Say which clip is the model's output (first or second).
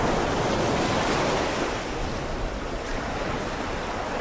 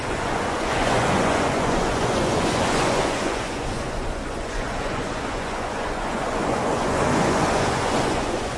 second